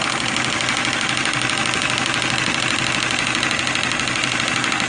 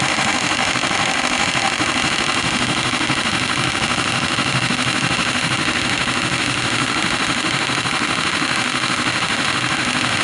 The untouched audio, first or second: first